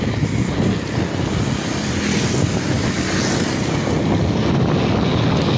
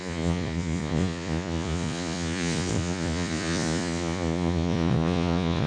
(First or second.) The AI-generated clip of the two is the second